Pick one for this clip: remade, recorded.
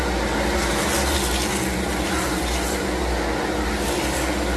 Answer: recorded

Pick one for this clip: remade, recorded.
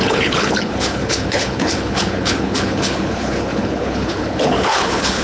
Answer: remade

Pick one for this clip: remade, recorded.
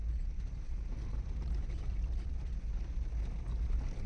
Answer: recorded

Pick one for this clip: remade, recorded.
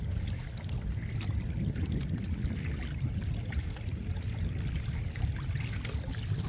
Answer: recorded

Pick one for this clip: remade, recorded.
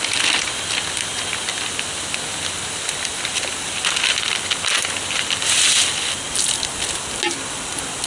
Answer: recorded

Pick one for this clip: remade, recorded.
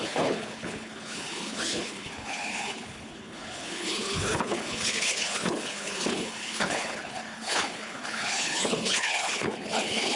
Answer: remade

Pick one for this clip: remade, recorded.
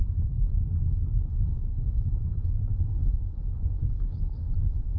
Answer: remade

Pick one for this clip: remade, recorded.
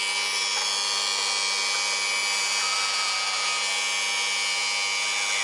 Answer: recorded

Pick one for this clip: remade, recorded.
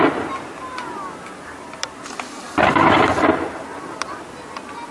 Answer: recorded